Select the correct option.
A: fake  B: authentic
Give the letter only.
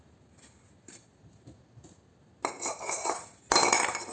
B